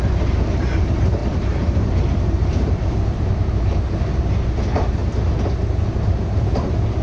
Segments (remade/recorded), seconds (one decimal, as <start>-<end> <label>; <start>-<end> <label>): 0.0-1.2 recorded; 1.2-4.2 remade; 4.2-7.0 recorded

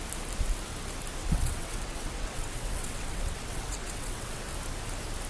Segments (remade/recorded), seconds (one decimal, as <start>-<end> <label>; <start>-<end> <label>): 0.0-1.2 recorded; 1.2-4.4 remade; 4.4-5.3 recorded